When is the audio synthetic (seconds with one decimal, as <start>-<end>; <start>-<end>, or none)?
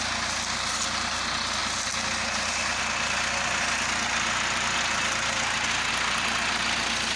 none